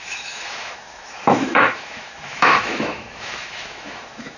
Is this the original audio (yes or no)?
no